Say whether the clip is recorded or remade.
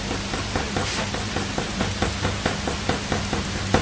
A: recorded